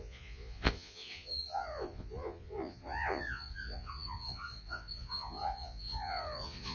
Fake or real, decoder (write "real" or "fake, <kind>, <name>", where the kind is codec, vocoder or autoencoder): fake, vocoder, Vocos